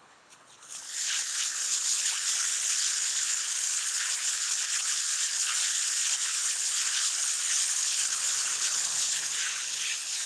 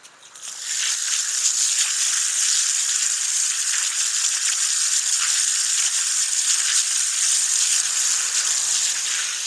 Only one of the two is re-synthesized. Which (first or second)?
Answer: first